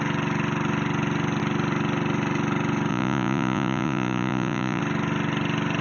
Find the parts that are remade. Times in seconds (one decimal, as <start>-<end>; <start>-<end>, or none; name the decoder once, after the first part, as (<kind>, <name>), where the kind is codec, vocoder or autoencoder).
2.9-4.8 (vocoder, Vocos)